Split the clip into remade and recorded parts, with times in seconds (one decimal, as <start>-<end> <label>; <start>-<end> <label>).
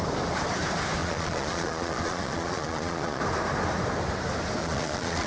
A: 0.0-1.0 recorded; 1.0-3.2 remade; 3.2-4.6 recorded; 4.6-5.3 remade